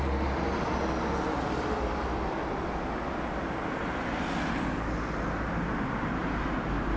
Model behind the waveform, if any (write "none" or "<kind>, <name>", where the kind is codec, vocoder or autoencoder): none